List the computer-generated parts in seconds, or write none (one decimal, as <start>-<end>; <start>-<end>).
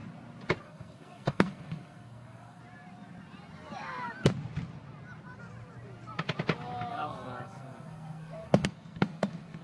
0.6-2.6; 6.9-9.6